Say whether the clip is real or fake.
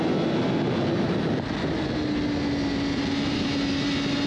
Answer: real